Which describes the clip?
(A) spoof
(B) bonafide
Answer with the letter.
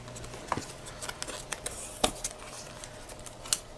B